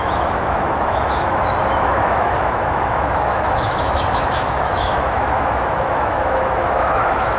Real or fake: fake